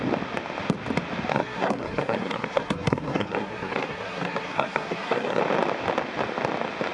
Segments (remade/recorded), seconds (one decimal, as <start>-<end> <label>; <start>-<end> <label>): 0.0-1.3 recorded; 1.3-5.4 remade; 5.4-6.9 recorded